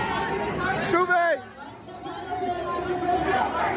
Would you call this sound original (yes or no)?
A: yes